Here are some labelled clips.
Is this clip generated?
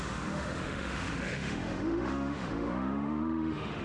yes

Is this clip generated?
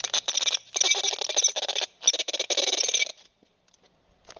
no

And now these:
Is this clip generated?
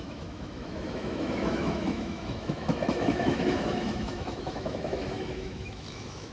yes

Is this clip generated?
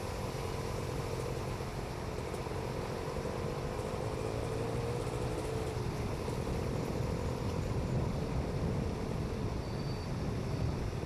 no